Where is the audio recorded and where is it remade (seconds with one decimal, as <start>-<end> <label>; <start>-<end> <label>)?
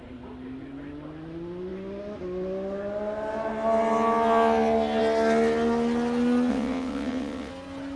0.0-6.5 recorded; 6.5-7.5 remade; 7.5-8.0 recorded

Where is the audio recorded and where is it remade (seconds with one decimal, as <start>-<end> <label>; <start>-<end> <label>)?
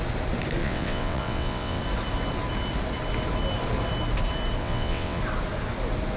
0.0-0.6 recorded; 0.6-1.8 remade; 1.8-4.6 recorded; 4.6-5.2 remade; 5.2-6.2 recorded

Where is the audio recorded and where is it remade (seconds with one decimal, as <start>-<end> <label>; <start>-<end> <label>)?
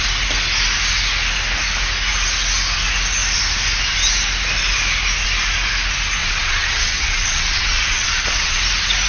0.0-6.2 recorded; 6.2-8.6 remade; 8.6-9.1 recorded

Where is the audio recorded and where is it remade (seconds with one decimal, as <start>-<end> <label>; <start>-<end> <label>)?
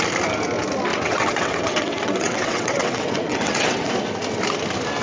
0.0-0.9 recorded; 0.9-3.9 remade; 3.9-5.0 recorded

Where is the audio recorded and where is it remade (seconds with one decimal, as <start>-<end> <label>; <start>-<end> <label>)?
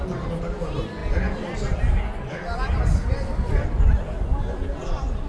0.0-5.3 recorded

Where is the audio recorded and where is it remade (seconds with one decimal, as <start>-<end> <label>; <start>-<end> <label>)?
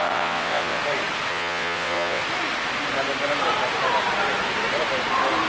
0.0-0.8 remade; 0.8-1.3 recorded; 1.3-2.2 remade; 2.2-5.5 recorded